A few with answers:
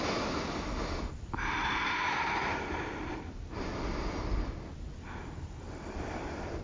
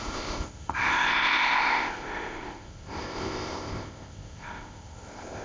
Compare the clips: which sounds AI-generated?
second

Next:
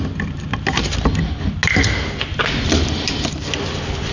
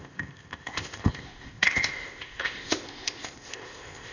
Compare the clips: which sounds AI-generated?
second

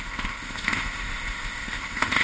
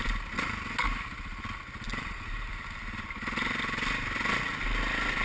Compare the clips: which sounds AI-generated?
first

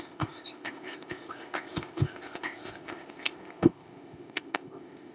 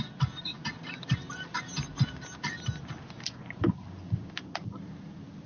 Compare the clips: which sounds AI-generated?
first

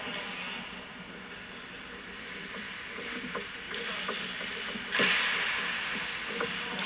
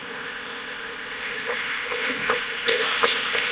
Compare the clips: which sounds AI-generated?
second